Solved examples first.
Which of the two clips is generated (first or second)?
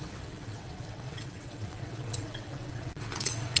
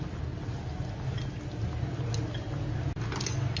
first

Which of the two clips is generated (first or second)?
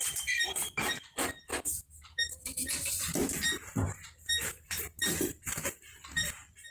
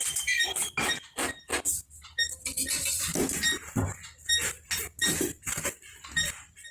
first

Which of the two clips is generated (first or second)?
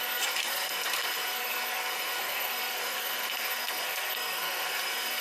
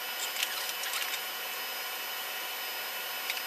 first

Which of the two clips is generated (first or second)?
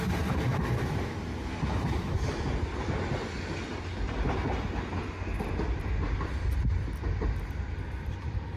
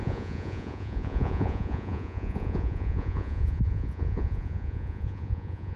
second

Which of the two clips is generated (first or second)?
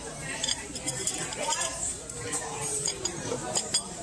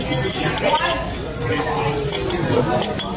first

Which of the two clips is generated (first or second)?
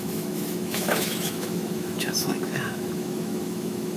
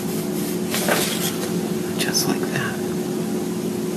first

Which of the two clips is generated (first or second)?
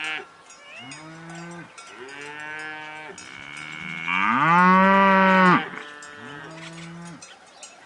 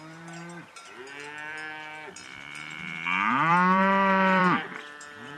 second